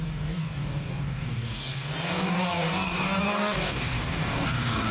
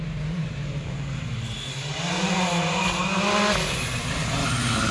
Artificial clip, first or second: first